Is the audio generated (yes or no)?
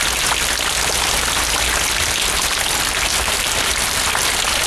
no